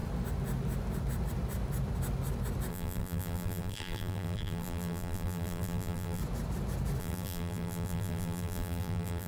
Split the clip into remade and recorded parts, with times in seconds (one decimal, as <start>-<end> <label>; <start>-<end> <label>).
0.0-2.7 recorded; 2.7-6.2 remade; 6.2-7.0 recorded; 7.0-9.3 remade